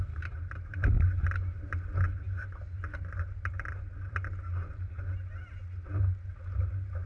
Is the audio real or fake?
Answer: real